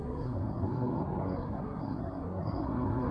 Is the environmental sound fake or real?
fake